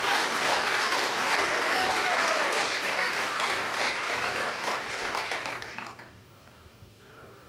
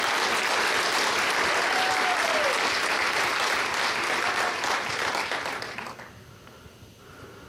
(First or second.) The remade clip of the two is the first